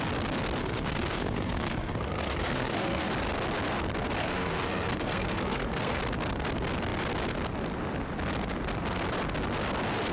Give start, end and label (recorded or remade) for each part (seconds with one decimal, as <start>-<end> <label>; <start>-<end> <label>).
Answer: 0.0-0.6 recorded; 0.6-3.1 remade; 3.1-4.2 recorded; 4.2-6.0 remade; 6.0-10.1 recorded